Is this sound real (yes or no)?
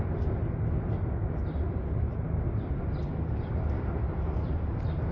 yes